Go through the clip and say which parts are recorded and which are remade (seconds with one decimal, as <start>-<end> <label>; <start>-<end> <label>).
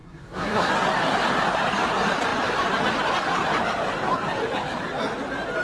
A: 0.0-0.7 remade; 0.7-5.6 recorded